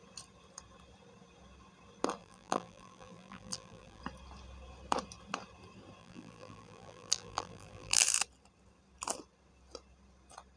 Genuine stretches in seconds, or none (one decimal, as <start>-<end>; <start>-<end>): 0.0-2.2; 4.0-6.0; 8.0-10.6